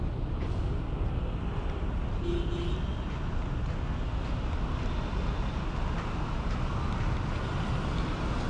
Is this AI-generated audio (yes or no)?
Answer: no